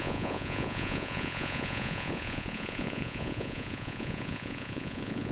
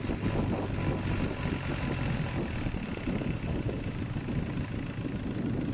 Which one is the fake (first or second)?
first